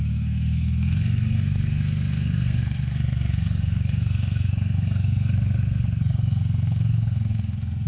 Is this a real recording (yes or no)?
no